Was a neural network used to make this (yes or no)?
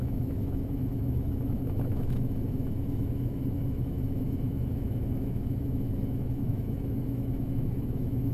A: yes